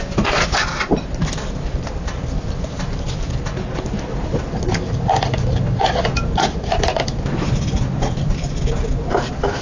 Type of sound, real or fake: real